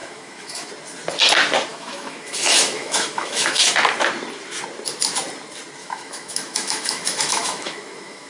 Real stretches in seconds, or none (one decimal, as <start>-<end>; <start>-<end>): 0.7-1.7; 3.7-5.8